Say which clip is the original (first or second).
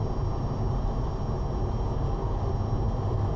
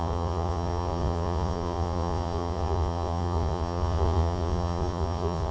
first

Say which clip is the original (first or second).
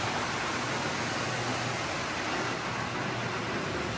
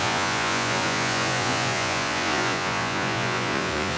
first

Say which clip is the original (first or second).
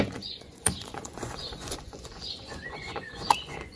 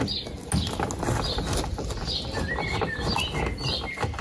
second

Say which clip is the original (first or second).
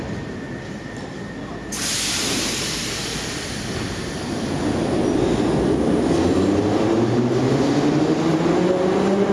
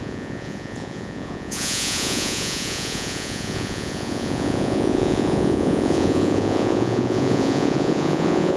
first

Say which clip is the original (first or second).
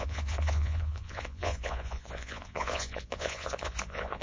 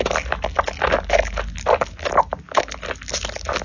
second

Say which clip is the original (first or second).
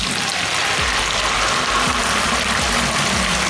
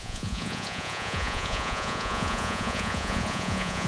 first